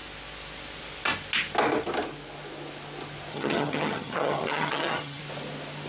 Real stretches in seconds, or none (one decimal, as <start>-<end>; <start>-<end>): 0.0-3.3; 5.2-5.9